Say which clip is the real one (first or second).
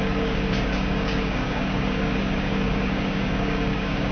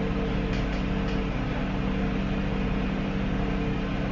second